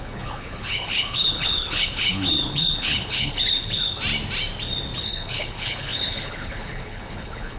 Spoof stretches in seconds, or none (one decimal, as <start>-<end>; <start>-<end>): 0.0-4.0; 5.0-7.6